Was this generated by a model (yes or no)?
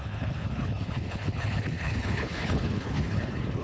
yes